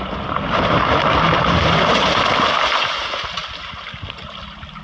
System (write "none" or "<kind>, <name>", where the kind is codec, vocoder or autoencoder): none